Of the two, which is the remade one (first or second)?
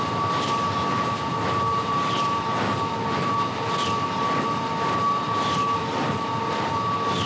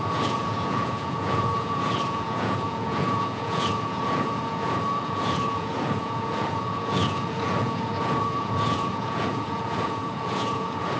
second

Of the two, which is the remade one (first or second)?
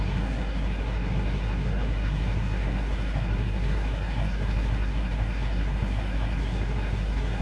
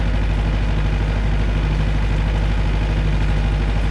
first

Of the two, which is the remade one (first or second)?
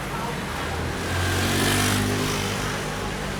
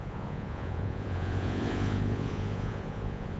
second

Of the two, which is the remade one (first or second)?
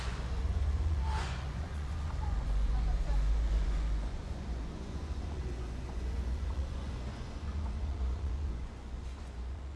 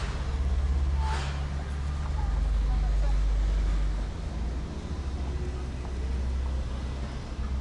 first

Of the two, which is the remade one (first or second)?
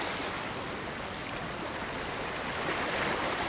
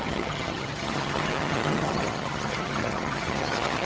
second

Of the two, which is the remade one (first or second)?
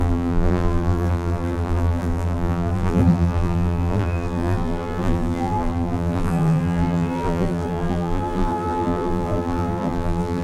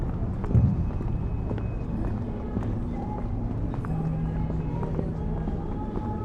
first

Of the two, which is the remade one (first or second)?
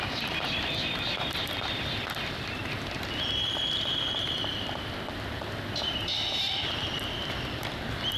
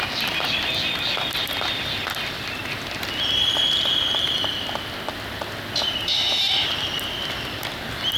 first